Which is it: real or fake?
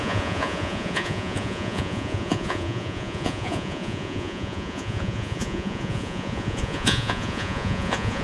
fake